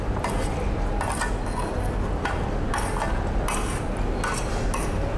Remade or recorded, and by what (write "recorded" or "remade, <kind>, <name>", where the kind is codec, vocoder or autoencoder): recorded